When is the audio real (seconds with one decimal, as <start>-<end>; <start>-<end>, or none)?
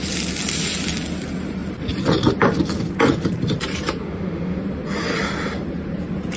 0.0-4.0; 4.6-6.4